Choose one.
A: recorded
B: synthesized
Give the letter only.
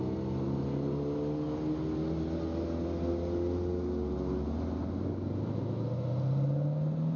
A